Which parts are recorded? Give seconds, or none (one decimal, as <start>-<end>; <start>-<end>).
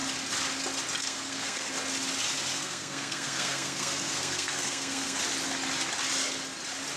0.0-1.0; 1.7-2.5; 5.2-7.0